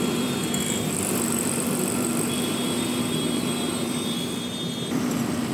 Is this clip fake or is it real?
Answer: fake